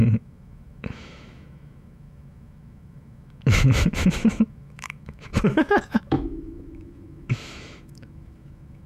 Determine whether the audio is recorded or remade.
remade